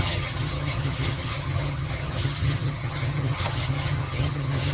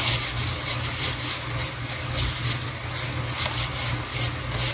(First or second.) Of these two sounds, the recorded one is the second